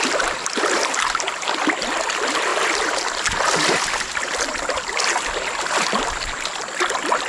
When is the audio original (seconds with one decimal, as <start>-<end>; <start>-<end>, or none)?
0.0-7.3